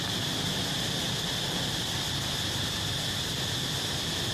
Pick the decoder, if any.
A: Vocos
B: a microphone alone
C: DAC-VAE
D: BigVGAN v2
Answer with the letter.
B